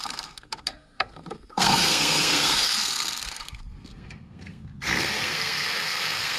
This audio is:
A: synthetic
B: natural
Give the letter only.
A